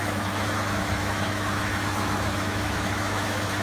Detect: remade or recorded remade